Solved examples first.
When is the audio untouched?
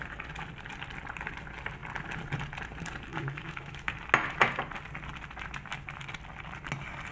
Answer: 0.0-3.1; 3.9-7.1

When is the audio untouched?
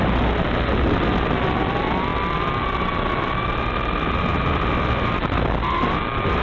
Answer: 0.0-6.4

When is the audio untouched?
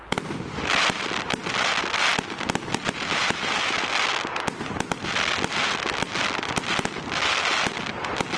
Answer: 0.0-8.4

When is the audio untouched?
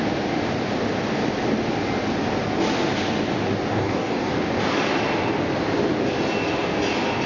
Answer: 0.0-3.7; 4.3-7.3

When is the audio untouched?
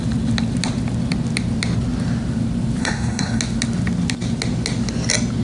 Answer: 0.0-2.8; 3.4-5.4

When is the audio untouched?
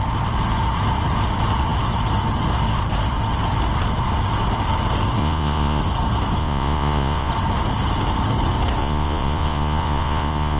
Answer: 0.0-5.2; 5.8-6.4; 7.3-8.8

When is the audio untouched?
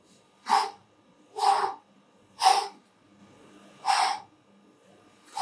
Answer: 0.0-0.8; 2.8-3.2; 3.9-5.4